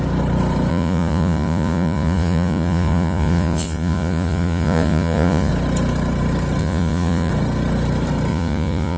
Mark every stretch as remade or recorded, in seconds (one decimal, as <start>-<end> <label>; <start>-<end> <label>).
0.0-0.7 recorded; 0.7-5.5 remade; 5.5-6.6 recorded; 6.6-7.3 remade; 7.3-8.3 recorded; 8.3-9.0 remade